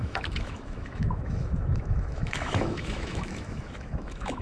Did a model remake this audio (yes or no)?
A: yes